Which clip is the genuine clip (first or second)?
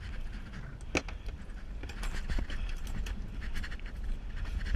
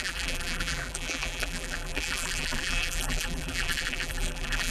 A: first